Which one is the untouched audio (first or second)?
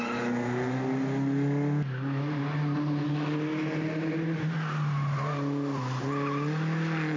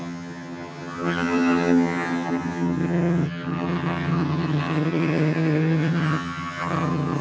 first